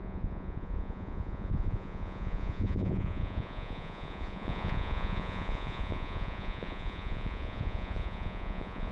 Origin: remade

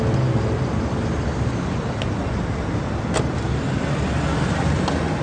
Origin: recorded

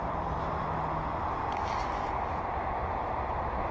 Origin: recorded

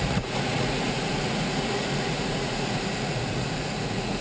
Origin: remade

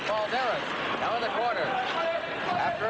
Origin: recorded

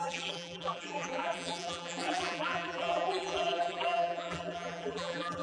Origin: remade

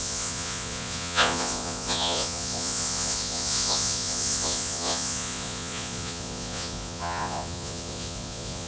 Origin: remade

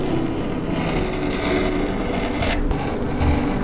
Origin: recorded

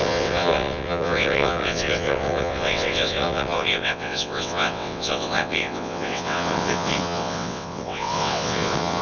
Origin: remade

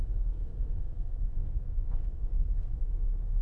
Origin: remade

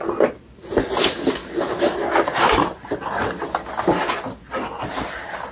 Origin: recorded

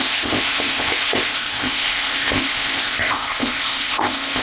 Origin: remade